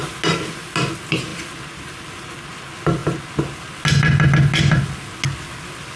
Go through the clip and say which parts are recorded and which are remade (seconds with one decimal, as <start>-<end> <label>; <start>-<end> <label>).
0.0-6.0 recorded